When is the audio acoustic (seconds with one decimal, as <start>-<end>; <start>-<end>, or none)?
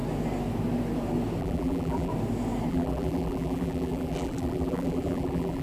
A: 0.0-1.4; 2.1-2.7